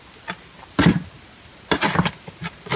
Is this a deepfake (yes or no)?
no